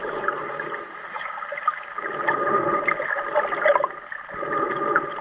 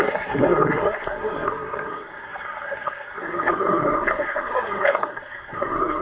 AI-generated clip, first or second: second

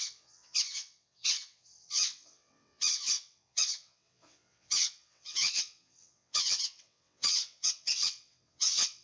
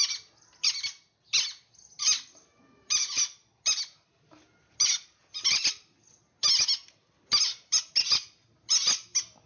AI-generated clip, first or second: first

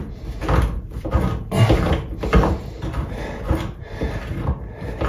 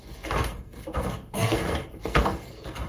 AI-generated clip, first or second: second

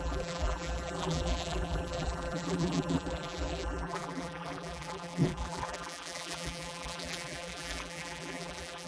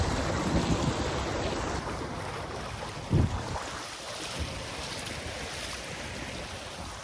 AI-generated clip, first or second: first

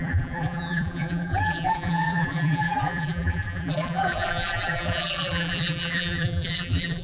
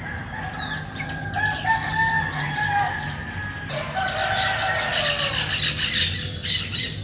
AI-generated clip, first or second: first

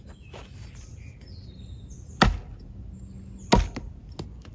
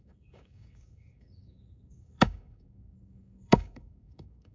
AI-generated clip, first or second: second